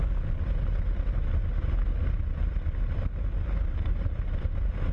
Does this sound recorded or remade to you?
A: recorded